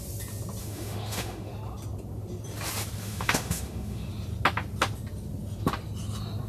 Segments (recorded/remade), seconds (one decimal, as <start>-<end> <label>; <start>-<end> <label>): 0.0-0.6 recorded; 0.6-1.5 remade; 1.5-3.0 recorded; 3.0-4.1 remade; 4.1-6.5 recorded